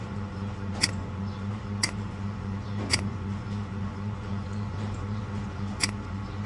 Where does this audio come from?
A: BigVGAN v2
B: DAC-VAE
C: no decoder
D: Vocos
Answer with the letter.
D